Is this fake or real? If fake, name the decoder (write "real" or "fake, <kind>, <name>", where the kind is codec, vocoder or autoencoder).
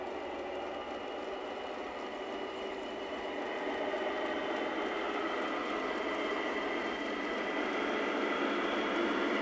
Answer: real